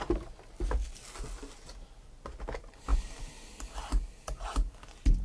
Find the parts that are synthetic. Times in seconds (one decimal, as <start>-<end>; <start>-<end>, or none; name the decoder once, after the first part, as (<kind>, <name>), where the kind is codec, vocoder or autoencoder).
none